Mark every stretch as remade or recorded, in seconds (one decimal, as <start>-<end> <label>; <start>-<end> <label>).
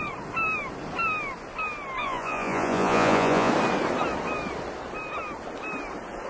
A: 0.0-2.0 recorded; 2.0-3.5 remade; 3.5-6.3 recorded